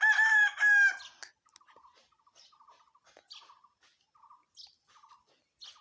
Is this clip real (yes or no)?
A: yes